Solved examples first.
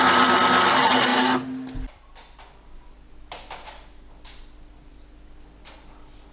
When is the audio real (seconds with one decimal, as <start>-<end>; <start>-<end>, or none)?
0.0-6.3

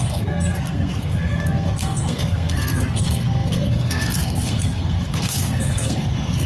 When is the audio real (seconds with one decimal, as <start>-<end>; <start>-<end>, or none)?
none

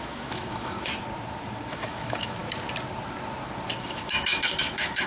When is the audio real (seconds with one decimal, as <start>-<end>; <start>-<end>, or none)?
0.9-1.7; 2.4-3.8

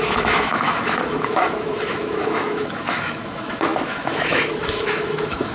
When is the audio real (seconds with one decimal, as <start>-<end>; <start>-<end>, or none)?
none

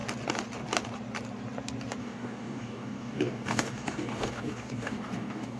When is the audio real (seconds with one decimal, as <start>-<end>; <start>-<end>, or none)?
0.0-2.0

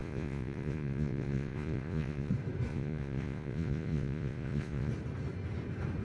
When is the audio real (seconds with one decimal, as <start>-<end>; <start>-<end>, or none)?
2.3-2.7; 4.9-6.0